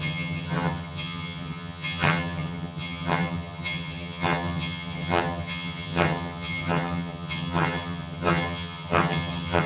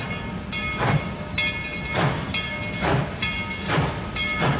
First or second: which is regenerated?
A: first